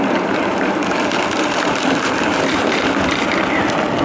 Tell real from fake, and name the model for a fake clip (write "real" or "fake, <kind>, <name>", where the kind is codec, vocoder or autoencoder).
fake, vocoder, BigVGAN v2